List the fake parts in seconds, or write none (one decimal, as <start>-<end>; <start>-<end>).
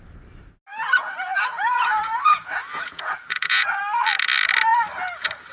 0.7-3.8